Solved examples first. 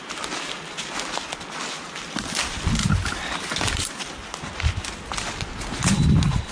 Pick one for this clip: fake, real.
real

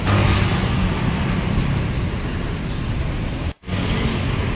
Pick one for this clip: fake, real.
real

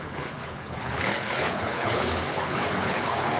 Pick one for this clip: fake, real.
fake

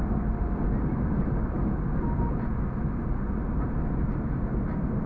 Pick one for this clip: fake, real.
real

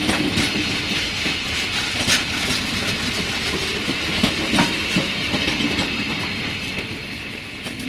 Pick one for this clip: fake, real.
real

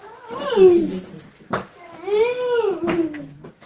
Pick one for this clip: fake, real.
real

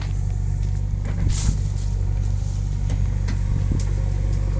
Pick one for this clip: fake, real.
real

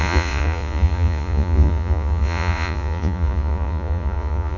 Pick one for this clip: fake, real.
fake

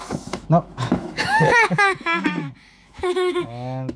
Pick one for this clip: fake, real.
fake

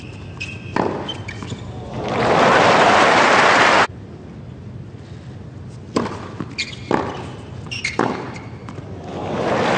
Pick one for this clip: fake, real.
real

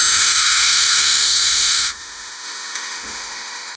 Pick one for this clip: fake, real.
fake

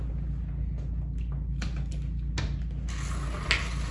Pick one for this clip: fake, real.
real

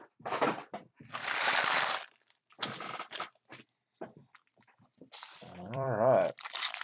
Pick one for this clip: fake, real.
fake